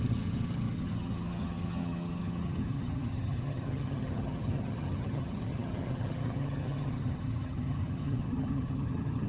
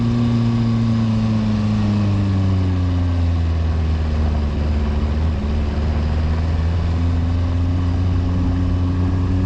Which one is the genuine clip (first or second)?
second